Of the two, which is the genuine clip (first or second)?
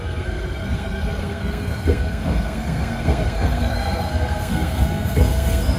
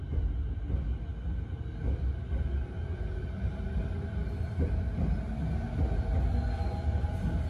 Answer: second